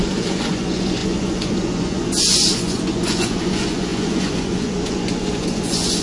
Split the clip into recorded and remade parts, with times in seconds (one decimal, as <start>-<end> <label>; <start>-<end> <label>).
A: 0.0-6.0 remade